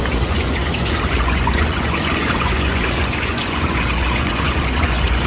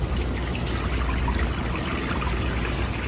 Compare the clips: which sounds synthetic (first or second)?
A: first